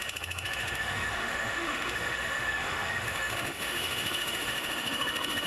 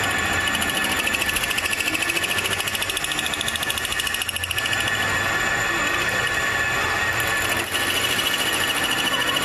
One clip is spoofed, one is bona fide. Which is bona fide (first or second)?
second